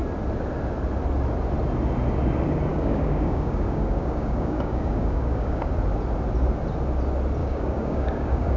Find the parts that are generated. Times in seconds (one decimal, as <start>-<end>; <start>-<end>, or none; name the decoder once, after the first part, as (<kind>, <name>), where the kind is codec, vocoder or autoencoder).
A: 2.7-5.7 (codec, DAC); 7.4-8.6